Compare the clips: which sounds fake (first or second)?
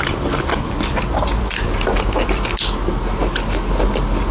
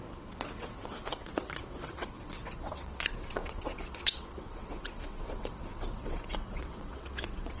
second